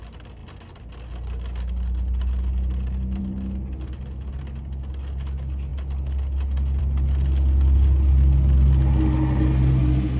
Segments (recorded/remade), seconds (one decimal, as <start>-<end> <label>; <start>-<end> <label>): 0.0-10.2 recorded